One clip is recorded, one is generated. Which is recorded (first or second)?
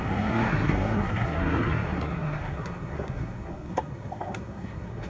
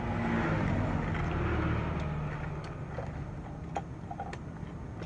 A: second